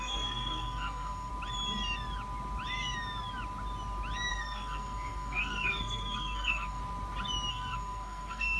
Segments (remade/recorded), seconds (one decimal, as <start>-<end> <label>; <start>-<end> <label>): 0.0-1.3 remade; 1.3-4.3 recorded; 4.3-6.8 remade; 6.8-7.5 recorded; 7.5-8.6 remade